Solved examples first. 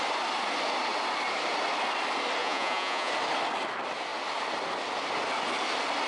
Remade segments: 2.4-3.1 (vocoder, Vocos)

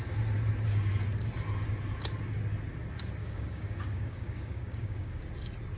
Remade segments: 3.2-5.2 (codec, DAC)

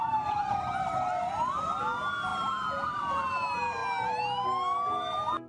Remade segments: none